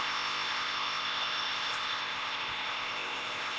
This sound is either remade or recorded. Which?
remade